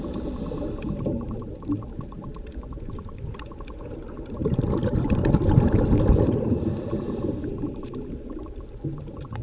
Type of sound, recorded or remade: remade